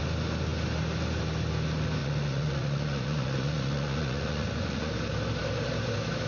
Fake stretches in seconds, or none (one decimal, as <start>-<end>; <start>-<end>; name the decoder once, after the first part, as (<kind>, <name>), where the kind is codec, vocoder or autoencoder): 2.0-4.9 (vocoder, Vocos)